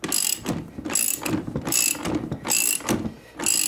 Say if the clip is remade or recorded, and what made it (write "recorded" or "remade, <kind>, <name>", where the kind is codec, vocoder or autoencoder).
recorded